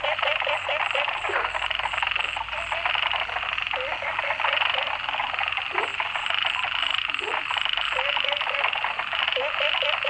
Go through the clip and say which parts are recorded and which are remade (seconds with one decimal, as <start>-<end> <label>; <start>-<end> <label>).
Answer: 0.0-10.1 recorded